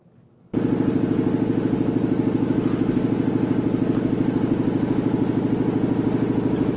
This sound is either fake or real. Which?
real